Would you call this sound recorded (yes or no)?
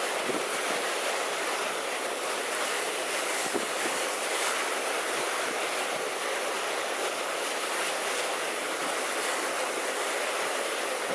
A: yes